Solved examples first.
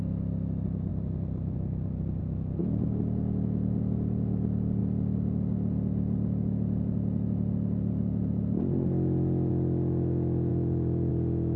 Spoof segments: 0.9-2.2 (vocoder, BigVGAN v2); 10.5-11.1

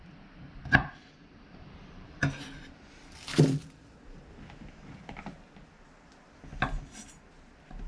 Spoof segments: 1.0-2.2 (vocoder, BigVGAN v2)